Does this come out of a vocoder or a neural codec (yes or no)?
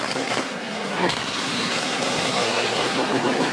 yes